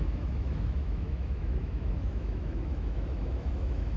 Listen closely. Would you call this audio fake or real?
fake